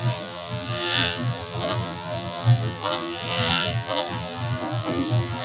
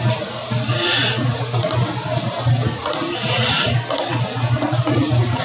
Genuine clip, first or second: second